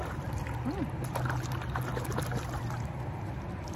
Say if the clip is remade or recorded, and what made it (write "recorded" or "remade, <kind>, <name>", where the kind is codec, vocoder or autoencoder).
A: recorded